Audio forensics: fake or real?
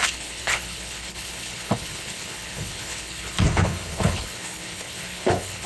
fake